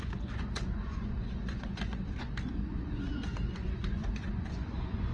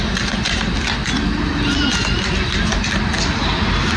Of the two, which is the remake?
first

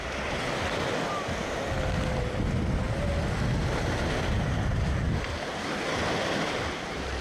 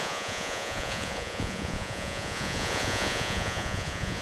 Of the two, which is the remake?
second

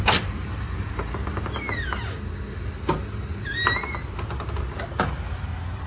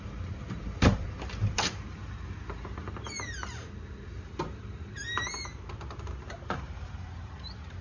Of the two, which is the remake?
second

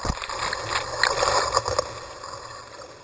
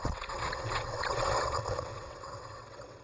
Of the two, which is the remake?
second